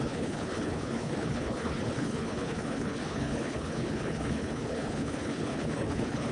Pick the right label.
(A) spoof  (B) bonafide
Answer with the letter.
A